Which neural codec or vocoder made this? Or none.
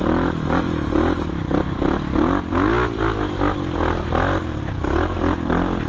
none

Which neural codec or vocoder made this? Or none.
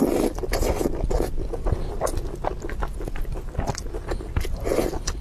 none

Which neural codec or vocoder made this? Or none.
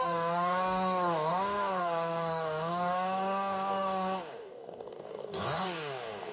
codec, DAC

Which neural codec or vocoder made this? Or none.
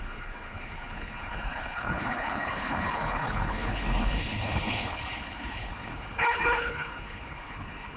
codec, HILCodec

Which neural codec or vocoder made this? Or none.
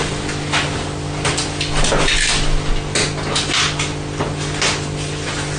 none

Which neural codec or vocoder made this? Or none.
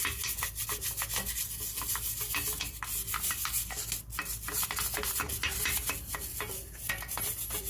none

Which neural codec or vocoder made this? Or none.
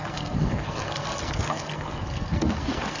codec, SNAC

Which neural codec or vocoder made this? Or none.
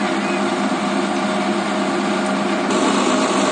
none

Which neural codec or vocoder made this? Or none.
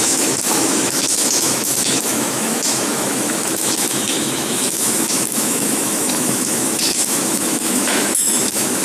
autoencoder, DAC-VAE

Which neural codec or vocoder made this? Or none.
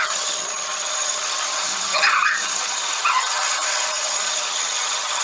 vocoder, HiFi-GAN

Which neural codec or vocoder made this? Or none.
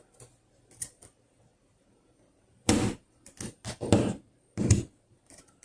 none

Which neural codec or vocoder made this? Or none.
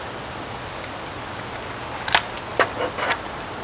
none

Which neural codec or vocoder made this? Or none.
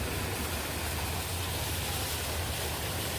none